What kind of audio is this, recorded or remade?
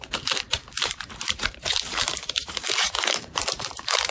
remade